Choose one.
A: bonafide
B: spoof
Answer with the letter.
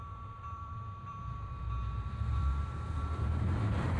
B